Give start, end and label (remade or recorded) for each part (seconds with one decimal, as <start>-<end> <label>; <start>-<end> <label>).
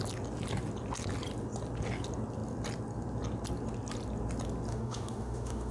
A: 0.0-4.7 recorded; 4.7-5.7 remade